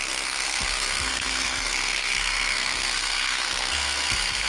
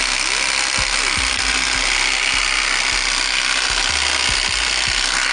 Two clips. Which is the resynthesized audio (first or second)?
first